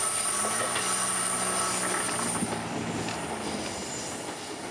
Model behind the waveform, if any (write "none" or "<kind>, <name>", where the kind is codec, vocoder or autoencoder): none